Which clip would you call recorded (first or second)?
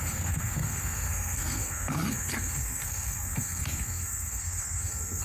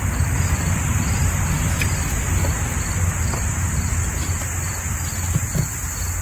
second